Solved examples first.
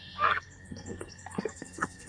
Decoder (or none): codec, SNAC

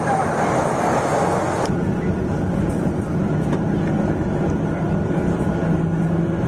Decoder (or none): none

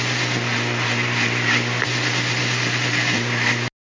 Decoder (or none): none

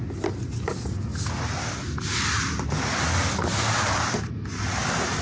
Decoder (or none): none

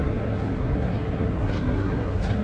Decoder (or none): codec, SNAC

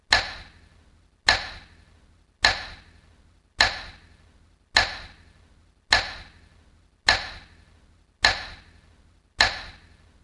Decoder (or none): none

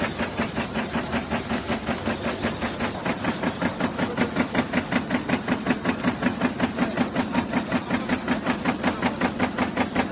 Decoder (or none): none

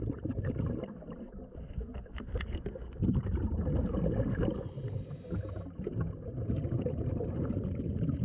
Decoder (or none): none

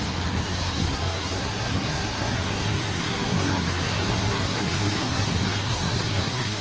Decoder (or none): codec, SNAC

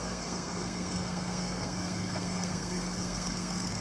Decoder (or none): codec, SNAC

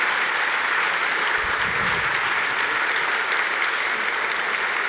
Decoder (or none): none